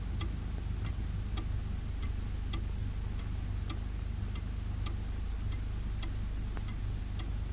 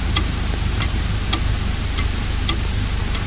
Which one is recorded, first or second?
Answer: first